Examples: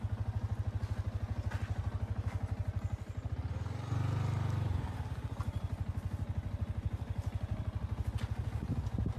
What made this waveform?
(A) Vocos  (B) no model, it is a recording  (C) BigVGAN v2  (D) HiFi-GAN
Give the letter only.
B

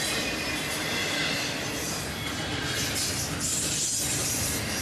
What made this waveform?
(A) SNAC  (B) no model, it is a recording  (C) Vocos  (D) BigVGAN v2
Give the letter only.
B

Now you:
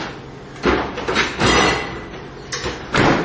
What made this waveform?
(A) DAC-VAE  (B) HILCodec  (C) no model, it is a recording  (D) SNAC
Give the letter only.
C